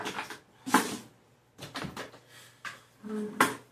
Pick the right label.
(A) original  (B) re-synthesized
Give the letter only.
A